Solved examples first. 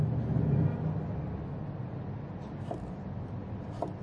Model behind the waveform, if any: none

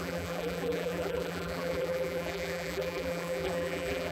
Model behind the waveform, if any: vocoder, BigVGAN v2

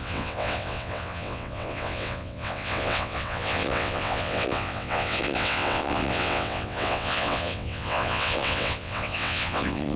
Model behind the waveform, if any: vocoder, WaveNeXt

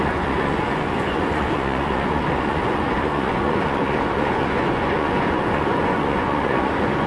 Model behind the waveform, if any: vocoder, Vocos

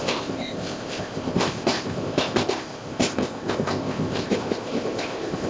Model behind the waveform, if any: codec, ZipCodec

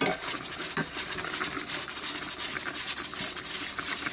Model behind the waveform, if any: none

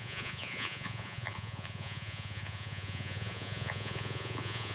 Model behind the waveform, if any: vocoder, Vocos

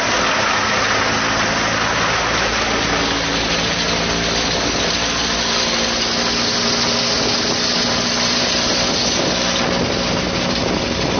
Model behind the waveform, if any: none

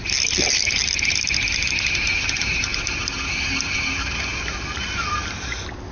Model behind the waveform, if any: none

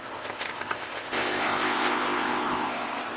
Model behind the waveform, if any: codec, ZipCodec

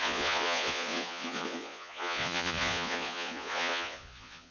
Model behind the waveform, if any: vocoder, Vocos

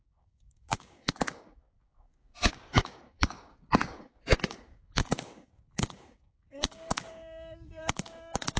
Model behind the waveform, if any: codec, DAC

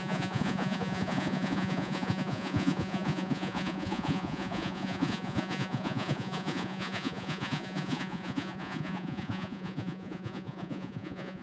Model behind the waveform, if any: vocoder, Vocos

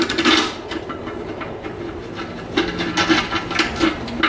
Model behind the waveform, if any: none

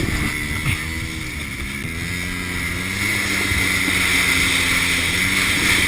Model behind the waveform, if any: none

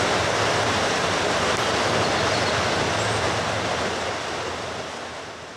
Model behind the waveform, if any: none